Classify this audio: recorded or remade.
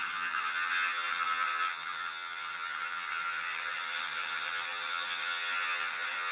remade